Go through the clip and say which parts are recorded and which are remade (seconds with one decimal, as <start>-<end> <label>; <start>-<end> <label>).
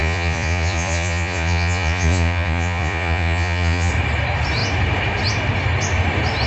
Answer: 0.0-3.9 remade; 3.9-6.5 recorded